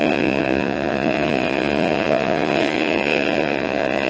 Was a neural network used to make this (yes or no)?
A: yes